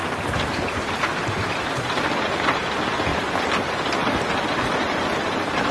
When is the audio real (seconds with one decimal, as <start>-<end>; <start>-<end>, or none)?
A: 0.0-5.7